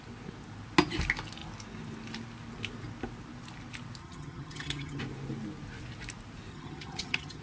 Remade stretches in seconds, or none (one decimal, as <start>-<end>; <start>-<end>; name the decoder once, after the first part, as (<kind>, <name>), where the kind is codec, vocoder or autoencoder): 4.0-5.0 (vocoder, HiFi-GAN); 6.5-7.4